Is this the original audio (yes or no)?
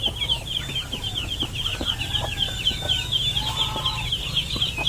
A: yes